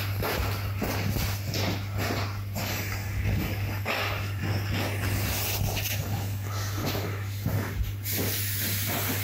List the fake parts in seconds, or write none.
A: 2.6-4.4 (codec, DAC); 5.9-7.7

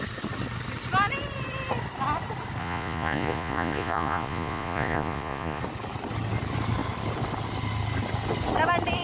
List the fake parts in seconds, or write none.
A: 2.6-5.6 (vocoder, Vocos)

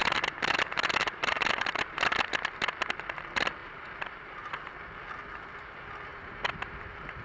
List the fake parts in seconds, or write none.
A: 0.0-2.0 (vocoder, BigVGAN v2); 3.6-4.7; 6.1-7.2

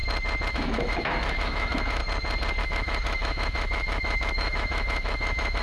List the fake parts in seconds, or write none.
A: 0.5-2.0 (autoencoder, DAC-VAE); 2.6-5.6

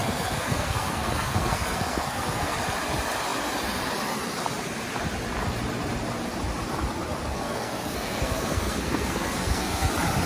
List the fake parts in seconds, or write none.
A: 0.0-2.6 (codec, SNAC); 7.3-9.9

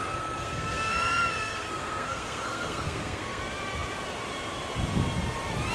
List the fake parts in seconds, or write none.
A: 0.0-3.4 (codec, SNAC)

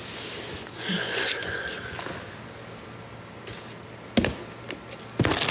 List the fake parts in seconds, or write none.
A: 0.5-1.8 (vocoder, Vocos)